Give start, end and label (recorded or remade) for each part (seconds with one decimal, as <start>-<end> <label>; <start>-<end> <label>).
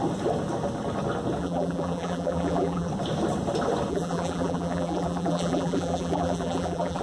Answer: 0.0-1.4 recorded; 1.4-2.9 remade; 2.9-3.9 recorded; 3.9-7.0 remade